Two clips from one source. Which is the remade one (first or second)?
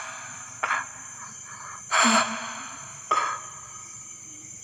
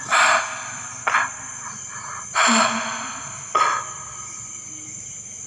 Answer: first